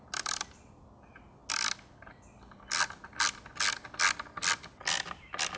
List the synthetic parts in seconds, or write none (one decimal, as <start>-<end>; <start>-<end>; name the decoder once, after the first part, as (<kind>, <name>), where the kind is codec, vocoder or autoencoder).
none